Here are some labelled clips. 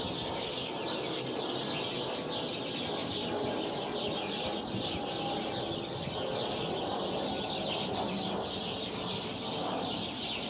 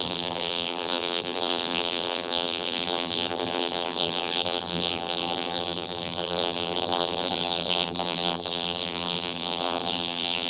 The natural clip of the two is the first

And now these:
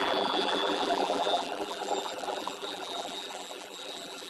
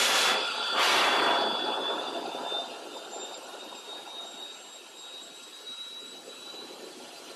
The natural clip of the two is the second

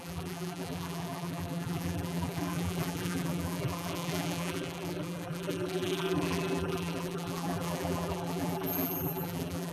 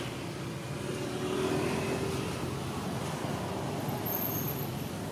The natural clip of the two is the second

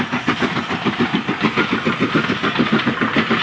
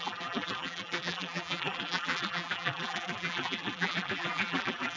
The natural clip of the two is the first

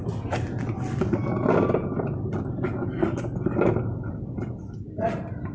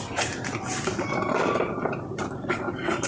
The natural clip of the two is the first